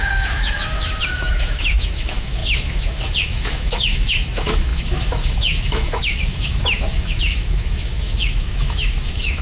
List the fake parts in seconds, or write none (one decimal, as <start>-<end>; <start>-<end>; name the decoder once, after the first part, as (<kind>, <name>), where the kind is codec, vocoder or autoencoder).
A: 0.0-9.4 (autoencoder, DAC-VAE)